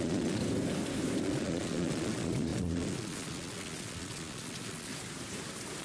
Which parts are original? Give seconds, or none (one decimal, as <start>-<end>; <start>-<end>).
0.4-1.2; 4.9-5.8